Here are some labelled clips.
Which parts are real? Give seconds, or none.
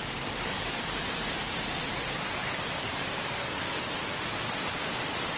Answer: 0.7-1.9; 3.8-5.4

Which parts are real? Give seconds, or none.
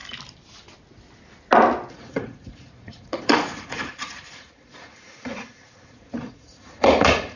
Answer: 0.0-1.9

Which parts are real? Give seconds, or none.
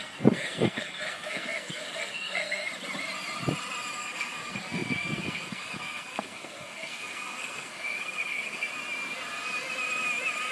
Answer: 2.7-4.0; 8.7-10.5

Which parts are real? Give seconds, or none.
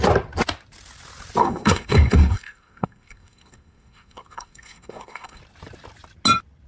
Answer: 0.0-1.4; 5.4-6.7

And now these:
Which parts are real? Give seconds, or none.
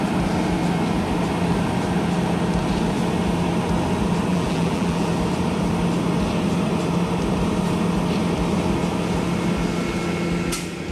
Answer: 0.0-4.3; 5.1-10.9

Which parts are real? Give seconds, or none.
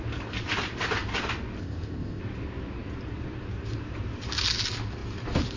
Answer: 0.0-1.6; 2.2-5.6